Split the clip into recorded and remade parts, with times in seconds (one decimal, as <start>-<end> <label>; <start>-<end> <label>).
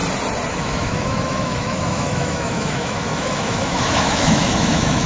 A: 0.0-0.5 recorded; 0.5-5.1 remade